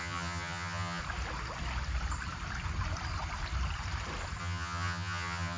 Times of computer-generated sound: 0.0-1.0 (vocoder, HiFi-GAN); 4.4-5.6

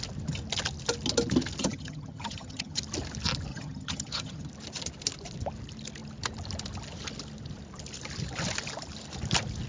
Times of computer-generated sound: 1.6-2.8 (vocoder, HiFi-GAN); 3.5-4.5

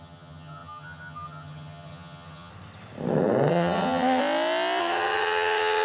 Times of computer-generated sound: 0.0-2.5 (vocoder, HiFi-GAN); 3.5-4.2; 4.8-5.8

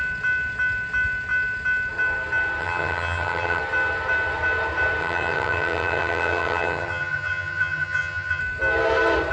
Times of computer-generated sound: 2.6-3.6 (vocoder, HiFi-GAN); 5.0-8.4